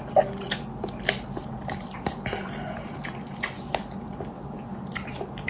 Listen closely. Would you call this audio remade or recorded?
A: recorded